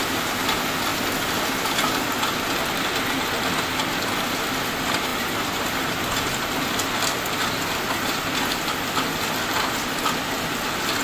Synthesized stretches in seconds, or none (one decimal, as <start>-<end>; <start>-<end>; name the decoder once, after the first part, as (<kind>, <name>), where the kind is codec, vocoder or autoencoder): none